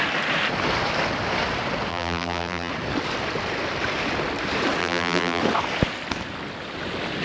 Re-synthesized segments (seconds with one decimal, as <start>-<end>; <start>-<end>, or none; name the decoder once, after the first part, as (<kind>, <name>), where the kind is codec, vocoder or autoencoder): 1.9-2.7 (vocoder, BigVGAN v2); 4.8-5.4